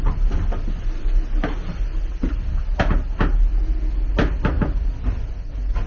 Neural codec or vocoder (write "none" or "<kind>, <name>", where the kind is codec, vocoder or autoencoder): none